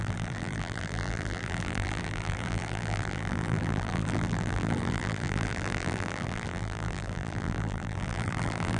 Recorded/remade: remade